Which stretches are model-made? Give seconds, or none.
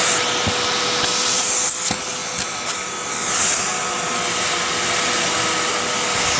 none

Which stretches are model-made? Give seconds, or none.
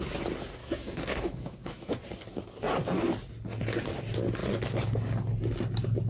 0.6-1.9 (autoencoder, DAC-VAE)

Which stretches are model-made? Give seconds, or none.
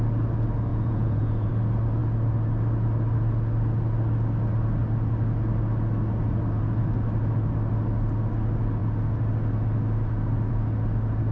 0.7-1.5 (vocoder, Vocos)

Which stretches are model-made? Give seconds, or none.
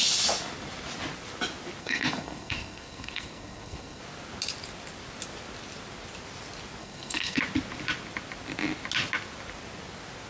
1.8-4.0 (codec, SNAC); 6.8-7.4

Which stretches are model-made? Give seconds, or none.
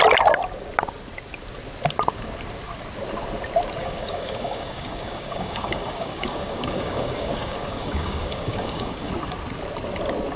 3.8-9.1 (codec, DAC)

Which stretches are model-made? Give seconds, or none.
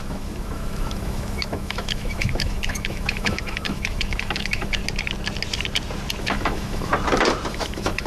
0.0-4.8 (autoencoder, DAC-VAE); 6.2-6.9; 7.5-8.1